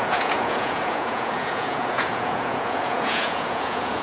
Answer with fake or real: fake